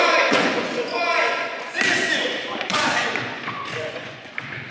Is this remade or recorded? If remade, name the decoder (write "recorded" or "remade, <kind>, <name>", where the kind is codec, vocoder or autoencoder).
remade, vocoder, Vocos